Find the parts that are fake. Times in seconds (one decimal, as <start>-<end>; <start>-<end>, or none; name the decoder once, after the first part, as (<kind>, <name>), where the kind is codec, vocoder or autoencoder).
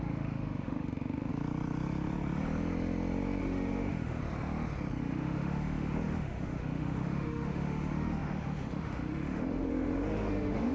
0.0-1.3 (autoencoder, DAC-VAE); 3.4-4.2; 5.0-10.7